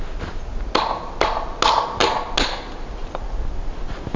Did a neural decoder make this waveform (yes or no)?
no